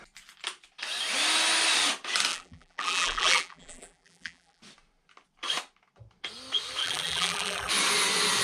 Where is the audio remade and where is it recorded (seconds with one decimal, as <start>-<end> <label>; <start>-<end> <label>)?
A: 0.0-2.3 recorded; 2.3-4.6 remade; 4.6-6.8 recorded; 6.8-7.7 remade; 7.7-8.4 recorded